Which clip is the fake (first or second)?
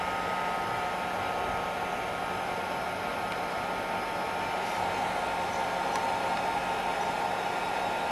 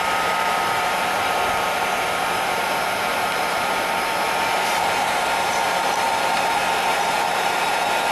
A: second